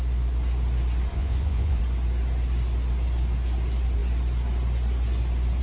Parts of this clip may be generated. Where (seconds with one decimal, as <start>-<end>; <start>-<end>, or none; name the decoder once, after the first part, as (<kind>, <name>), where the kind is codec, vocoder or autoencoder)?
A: 1.1-1.8 (vocoder, Vocos)